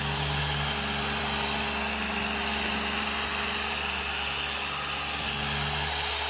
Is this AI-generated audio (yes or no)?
no